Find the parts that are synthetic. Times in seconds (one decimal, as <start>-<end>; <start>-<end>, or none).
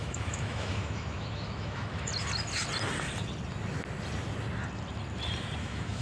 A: 0.0-2.1; 5.6-6.0